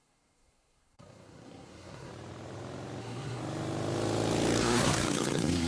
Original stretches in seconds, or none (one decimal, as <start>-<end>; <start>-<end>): 2.1-3.0; 3.4-4.6